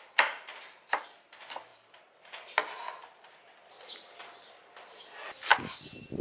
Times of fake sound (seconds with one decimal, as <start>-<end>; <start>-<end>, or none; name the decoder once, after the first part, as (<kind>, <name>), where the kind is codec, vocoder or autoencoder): none